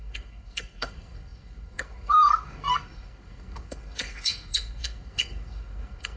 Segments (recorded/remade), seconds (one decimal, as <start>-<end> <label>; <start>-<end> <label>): 0.0-6.2 remade